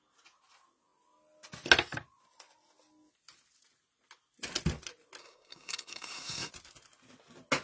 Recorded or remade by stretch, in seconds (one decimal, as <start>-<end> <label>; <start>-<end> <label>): 0.0-5.2 recorded; 5.2-6.5 remade; 6.5-7.6 recorded